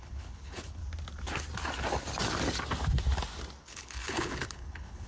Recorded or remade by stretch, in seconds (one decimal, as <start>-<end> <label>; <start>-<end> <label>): 0.0-0.8 remade; 0.8-3.6 recorded; 3.6-5.1 remade